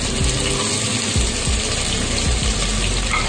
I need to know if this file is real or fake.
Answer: real